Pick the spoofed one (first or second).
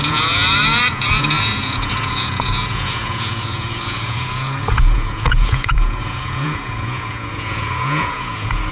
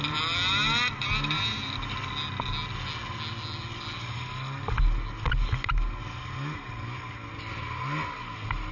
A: first